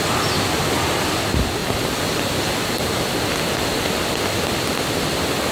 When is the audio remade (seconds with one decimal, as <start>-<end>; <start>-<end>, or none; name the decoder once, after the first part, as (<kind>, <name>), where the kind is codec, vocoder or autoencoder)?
none